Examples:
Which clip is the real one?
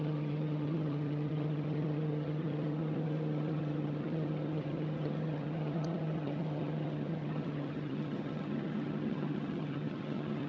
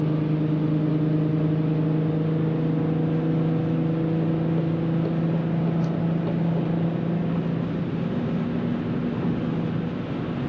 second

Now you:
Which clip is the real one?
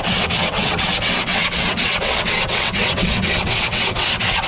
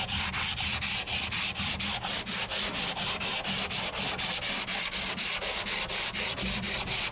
second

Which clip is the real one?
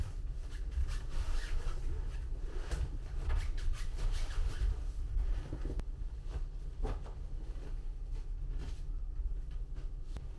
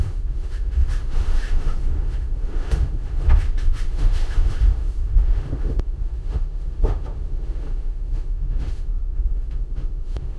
first